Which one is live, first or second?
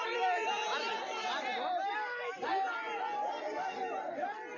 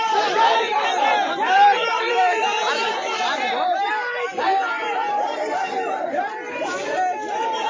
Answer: first